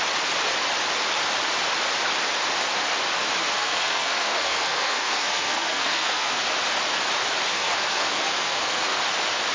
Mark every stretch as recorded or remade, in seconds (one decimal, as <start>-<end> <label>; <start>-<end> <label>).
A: 0.0-3.4 recorded; 3.4-6.4 remade; 6.4-7.5 recorded; 7.5-9.0 remade; 9.0-9.5 recorded